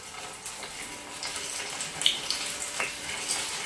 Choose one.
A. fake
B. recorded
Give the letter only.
B